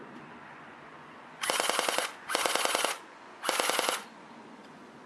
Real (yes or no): no